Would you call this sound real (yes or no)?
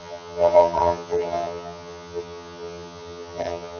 no